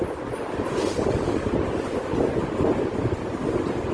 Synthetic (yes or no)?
no